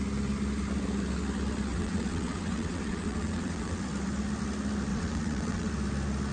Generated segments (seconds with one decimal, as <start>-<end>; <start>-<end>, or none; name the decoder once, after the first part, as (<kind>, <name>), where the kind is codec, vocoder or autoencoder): 1.7-3.8 (vocoder, WaveNeXt); 4.9-5.7